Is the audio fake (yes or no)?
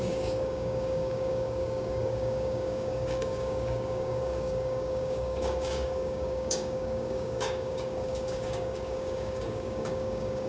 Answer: yes